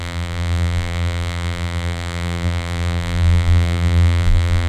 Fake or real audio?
fake